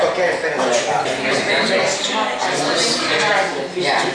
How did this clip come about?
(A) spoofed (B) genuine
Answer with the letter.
B